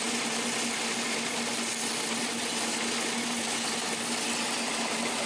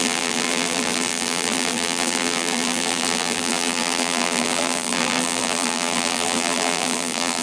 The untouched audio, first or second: first